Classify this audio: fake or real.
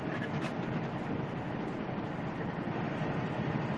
real